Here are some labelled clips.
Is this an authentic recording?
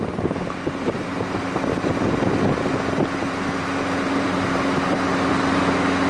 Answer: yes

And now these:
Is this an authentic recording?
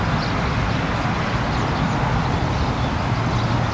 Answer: yes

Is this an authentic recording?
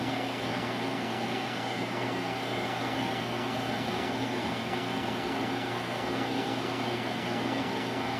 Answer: no